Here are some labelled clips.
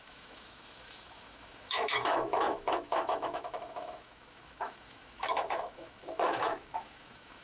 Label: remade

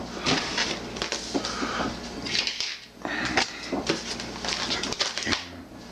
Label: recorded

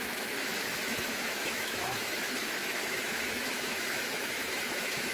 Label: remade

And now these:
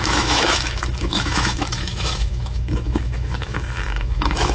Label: remade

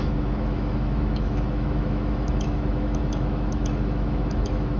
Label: remade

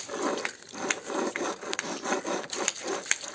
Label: recorded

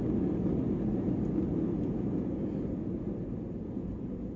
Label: recorded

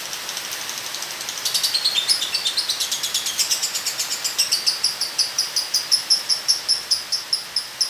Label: recorded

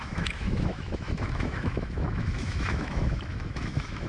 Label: remade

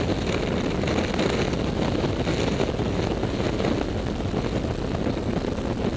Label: recorded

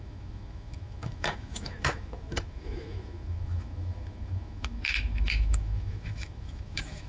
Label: remade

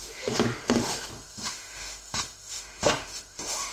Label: remade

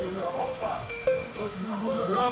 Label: remade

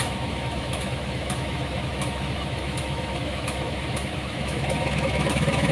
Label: remade